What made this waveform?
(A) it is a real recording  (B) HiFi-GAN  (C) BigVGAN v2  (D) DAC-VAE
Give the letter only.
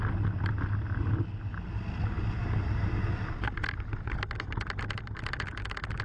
A